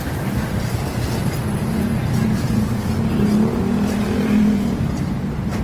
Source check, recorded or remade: remade